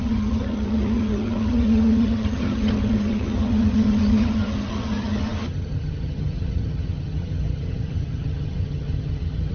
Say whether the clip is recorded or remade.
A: remade